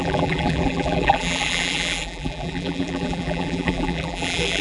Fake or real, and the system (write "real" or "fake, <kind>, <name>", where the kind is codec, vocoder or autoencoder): fake, vocoder, BigVGAN v2